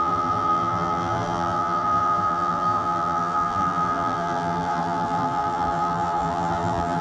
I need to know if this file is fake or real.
fake